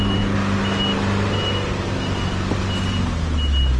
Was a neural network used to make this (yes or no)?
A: no